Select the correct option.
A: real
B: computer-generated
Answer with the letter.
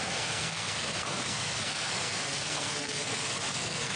B